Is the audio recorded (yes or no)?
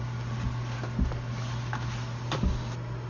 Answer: yes